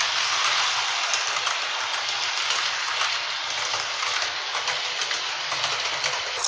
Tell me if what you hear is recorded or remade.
recorded